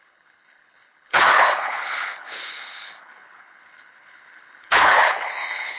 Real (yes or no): no